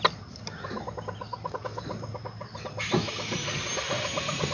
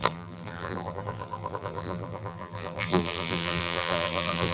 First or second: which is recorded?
first